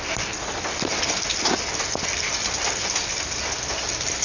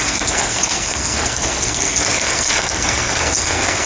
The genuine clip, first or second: first